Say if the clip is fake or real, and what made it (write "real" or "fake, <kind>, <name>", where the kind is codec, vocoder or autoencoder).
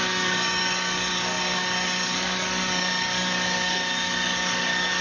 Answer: fake, codec, DAC